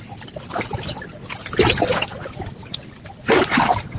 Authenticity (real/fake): real